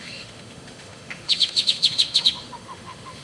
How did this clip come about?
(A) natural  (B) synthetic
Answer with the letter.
B